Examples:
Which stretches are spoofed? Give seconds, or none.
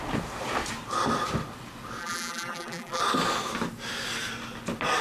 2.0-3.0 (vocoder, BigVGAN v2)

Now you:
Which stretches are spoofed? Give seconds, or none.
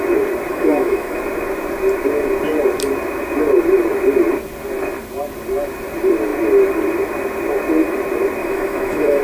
0.5-1.2 (autoencoder, DAC-VAE); 8.4-9.2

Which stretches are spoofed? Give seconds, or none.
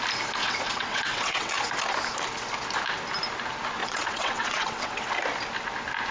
0.4-1.5 (vocoder, WaveNeXt); 3.8-5.1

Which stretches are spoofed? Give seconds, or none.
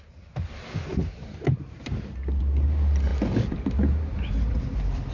0.9-2.4 (vocoder, BigVGAN v2)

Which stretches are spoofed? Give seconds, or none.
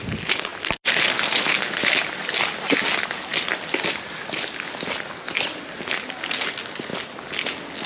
none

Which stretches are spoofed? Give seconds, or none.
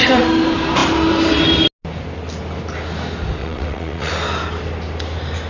3.4-4.1 (vocoder, WaveNeXt)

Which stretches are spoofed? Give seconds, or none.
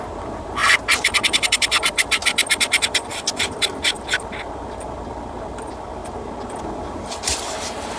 0.0-2.2 (vocoder, BigVGAN v2); 2.8-6.0; 6.7-8.0